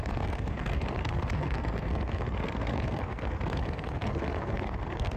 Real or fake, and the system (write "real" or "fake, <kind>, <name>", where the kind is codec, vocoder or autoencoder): fake, codec, SNAC